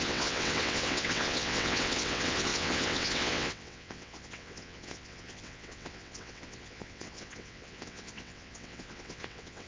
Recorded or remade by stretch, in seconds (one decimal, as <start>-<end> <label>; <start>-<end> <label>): 0.0-9.7 remade